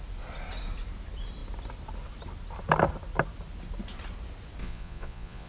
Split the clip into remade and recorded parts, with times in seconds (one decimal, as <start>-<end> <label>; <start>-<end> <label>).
0.0-4.6 recorded; 4.6-5.5 remade